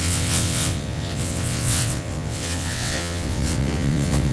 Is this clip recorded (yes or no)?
no